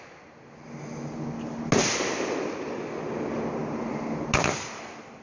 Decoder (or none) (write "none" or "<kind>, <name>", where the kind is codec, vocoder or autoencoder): none